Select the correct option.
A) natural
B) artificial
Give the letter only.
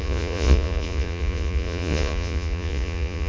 B